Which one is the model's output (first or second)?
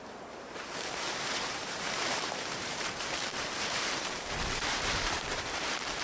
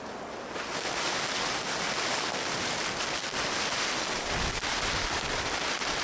first